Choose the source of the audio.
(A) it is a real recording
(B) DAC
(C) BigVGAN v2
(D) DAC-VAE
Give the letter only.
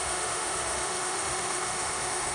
D